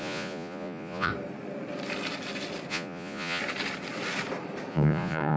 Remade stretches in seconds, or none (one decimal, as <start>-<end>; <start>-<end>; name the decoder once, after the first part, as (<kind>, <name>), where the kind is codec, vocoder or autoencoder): 0.0-1.1 (vocoder, Vocos); 2.7-3.4; 4.7-5.4